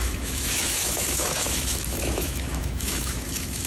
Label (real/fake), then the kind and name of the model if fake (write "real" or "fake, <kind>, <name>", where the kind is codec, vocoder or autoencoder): fake, autoencoder, DAC-VAE